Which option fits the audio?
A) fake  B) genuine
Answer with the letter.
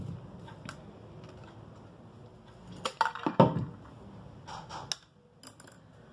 B